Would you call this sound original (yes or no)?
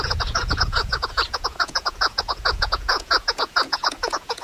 no